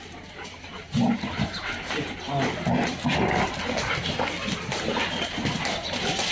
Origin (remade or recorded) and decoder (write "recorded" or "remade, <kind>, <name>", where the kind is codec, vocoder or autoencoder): recorded